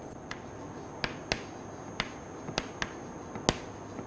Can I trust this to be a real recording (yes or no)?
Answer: yes